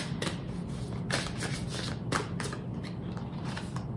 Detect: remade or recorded recorded